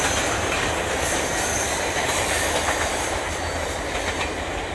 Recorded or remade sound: remade